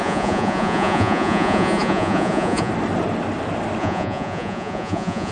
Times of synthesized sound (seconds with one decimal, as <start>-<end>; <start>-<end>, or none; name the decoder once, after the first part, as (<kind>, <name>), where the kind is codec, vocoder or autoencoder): 0.0-2.7 (vocoder, Vocos); 3.8-5.3